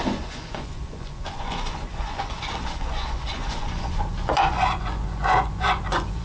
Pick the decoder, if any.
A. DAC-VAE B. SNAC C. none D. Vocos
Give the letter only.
D